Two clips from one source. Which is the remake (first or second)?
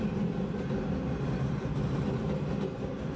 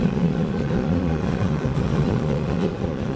second